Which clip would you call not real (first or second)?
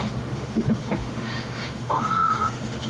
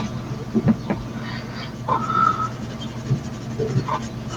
first